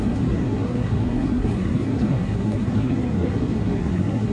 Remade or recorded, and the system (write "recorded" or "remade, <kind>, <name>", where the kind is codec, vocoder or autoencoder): remade, codec, SNAC